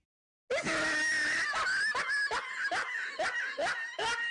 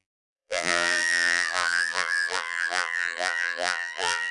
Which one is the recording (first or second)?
first